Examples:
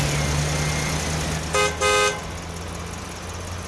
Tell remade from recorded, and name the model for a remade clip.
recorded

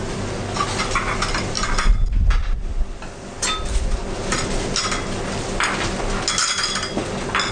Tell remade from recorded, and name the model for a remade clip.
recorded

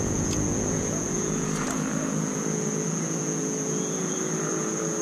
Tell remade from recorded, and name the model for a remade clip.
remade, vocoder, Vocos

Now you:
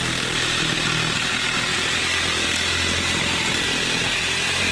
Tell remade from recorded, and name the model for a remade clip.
recorded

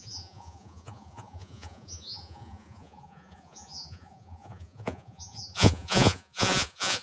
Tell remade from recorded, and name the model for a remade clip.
remade, vocoder, Vocos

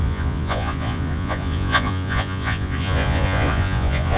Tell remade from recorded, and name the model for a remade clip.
remade, vocoder, Vocos